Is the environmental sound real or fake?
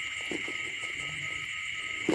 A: fake